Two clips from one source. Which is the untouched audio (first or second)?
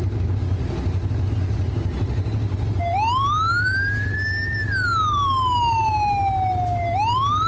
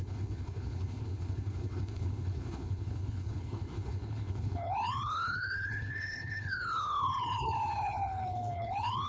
first